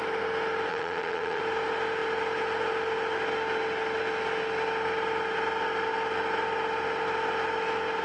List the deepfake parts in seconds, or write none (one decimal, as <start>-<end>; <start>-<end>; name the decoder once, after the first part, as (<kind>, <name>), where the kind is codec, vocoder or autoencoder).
0.7-1.4 (vocoder, WaveNeXt)